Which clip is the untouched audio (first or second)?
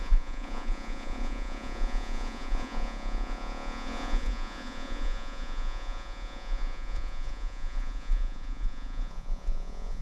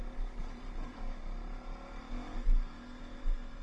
second